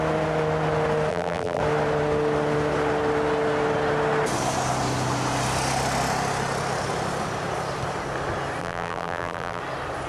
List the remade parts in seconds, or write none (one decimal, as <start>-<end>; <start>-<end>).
1.1-1.6; 8.6-9.6